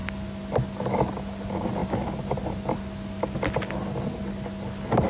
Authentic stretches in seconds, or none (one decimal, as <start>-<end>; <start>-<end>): 0.0-5.1

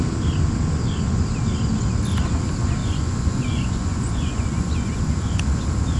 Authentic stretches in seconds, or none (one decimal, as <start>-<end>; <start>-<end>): 0.0-2.8; 5.4-6.0

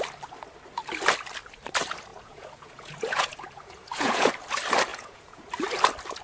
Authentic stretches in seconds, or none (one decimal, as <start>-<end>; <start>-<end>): 0.0-2.1; 4.3-4.9; 5.5-6.2

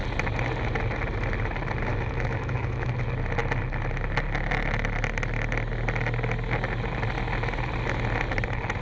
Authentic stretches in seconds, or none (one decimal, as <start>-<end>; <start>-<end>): 0.0-1.9; 2.9-8.8

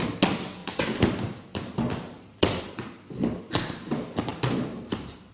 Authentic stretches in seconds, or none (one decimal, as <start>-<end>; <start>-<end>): 0.0-0.6; 3.4-4.3